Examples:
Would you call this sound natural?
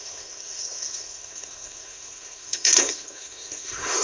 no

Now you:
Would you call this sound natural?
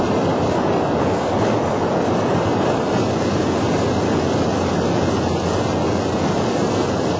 yes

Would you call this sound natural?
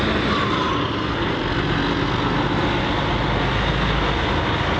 yes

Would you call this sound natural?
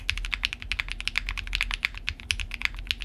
yes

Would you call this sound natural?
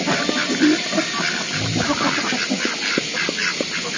yes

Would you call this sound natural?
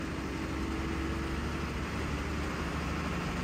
yes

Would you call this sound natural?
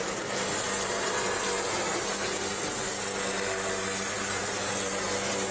yes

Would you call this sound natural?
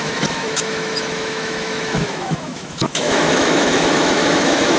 no